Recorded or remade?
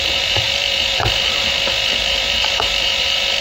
remade